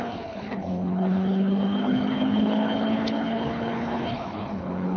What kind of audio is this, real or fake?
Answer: fake